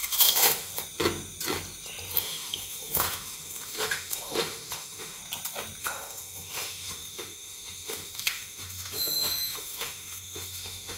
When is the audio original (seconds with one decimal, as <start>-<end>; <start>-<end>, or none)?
0.7-2.2; 5.2-5.8